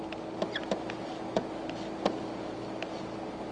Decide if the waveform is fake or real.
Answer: real